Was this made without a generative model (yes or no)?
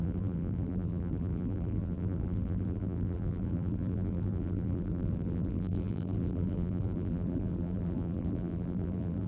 no